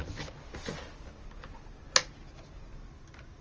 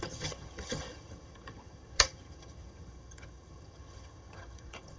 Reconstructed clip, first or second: second